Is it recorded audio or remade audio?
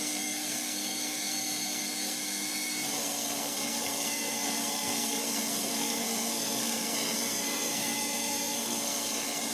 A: remade